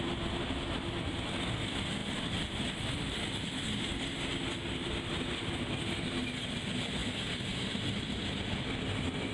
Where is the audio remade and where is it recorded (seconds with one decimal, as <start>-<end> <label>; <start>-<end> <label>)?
0.0-9.3 recorded